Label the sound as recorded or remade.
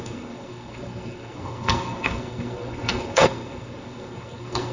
remade